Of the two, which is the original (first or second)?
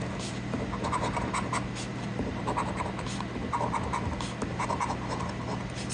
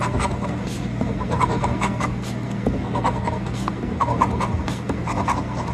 first